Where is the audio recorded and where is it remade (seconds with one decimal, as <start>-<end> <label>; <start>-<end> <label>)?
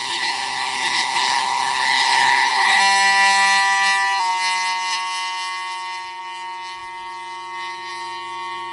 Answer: 0.0-2.8 remade; 2.8-8.7 recorded